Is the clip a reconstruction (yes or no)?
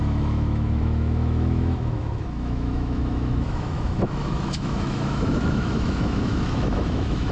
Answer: yes